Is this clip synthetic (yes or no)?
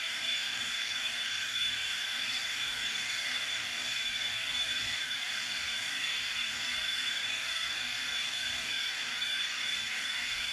yes